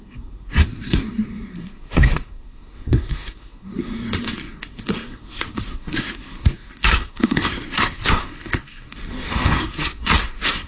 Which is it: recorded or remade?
remade